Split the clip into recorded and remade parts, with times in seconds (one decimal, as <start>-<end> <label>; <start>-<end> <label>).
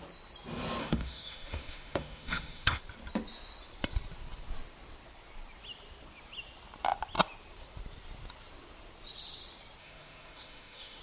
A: 0.0-0.8 recorded; 0.8-2.8 remade; 2.8-9.8 recorded; 9.8-11.0 remade